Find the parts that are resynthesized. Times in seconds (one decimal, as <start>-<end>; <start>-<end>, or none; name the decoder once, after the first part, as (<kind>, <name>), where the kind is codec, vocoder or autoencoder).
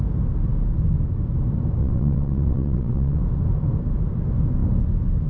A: 1.8-3.2 (vocoder, WaveNeXt)